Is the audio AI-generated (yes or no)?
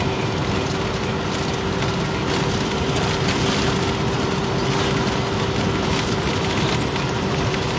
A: no